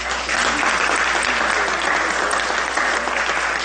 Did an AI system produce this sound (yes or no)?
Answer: no